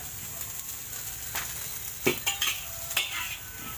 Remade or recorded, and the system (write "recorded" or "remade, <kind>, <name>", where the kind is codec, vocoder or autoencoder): remade, vocoder, BigVGAN v2